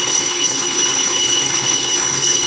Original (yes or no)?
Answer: no